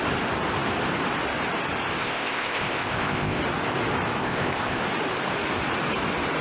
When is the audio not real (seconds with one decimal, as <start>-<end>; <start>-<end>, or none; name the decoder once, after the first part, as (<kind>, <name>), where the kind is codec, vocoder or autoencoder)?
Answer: 2.0-3.4 (codec, ZipCodec); 4.2-4.8